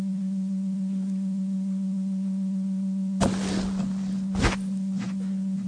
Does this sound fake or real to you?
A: real